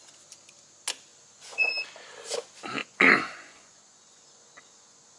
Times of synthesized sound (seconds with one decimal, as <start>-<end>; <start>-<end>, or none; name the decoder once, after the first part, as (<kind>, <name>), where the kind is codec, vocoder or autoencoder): 1.1-1.7 (vocoder, Vocos); 2.8-5.2